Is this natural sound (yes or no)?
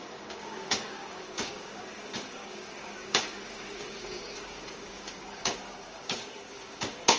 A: no